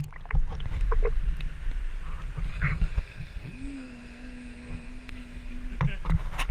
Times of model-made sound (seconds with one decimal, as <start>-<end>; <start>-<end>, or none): 2.5-5.5